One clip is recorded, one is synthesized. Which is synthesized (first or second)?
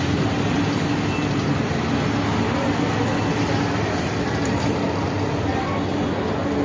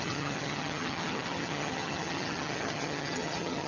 second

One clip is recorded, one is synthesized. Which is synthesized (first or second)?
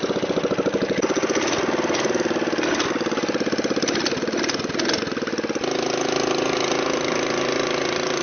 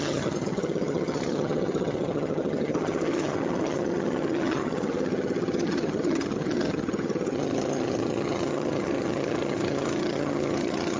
second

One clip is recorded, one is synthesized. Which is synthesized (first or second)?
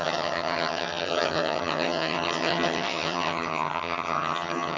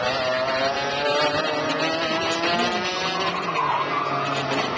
first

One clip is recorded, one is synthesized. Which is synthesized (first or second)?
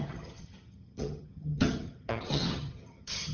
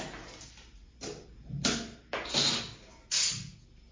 first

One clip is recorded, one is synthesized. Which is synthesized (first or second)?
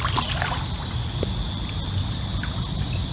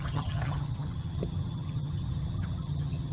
second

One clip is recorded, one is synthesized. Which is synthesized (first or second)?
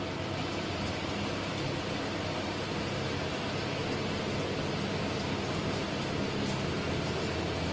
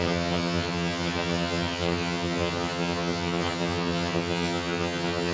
second